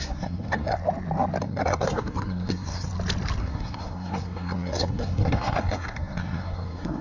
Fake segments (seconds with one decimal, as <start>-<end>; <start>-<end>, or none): 0.0-0.8; 1.4-2.9; 3.4-7.0